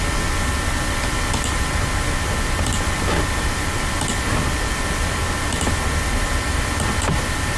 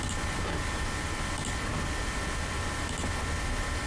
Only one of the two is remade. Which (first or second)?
first